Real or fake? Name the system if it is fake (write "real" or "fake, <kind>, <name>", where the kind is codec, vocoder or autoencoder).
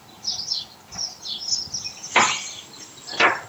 real